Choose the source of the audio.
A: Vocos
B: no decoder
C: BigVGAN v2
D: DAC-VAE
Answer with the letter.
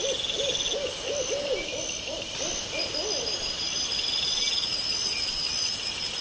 B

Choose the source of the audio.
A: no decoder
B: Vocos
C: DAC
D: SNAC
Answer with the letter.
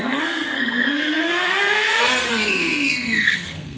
D